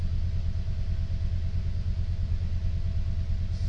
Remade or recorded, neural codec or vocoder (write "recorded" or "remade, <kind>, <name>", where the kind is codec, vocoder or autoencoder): recorded